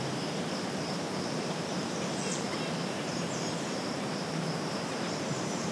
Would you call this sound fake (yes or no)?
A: yes